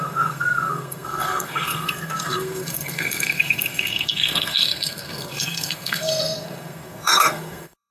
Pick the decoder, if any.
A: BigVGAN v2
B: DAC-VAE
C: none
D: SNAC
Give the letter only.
D